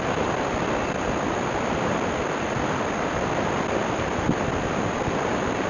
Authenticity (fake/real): real